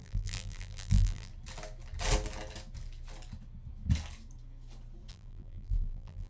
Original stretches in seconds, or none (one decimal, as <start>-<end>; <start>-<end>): 1.3-5.1